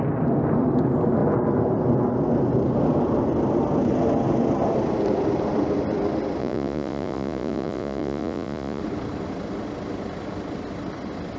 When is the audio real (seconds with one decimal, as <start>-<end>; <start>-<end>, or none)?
0.0-6.4; 8.8-11.4